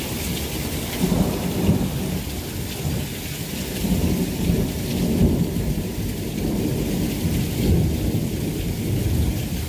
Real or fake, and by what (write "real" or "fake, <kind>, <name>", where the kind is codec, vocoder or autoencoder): real